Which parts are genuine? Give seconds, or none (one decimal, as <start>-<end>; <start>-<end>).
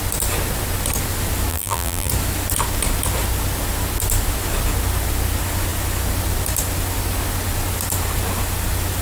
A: 0.0-1.5; 2.1-9.0